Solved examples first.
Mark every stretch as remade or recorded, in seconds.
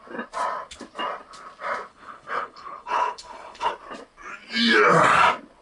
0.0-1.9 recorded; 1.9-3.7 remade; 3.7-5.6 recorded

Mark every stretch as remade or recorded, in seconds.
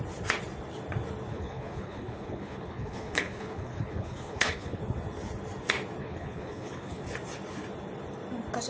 0.0-1.3 recorded; 1.3-4.8 remade; 4.8-6.0 recorded; 6.0-7.0 remade; 7.0-8.7 recorded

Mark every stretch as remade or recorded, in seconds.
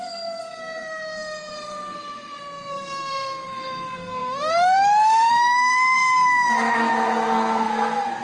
0.0-8.2 remade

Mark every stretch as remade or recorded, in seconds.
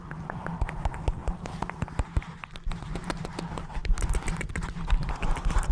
0.0-5.7 recorded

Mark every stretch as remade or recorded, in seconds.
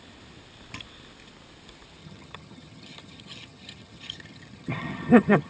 0.0-2.0 recorded; 2.0-5.5 remade